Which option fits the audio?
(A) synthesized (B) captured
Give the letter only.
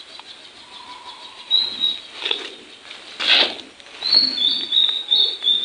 B